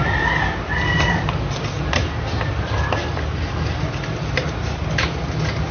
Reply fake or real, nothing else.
real